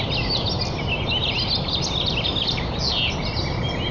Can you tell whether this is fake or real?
real